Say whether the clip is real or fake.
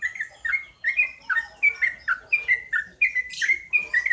real